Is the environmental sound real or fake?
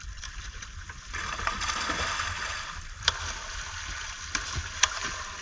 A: real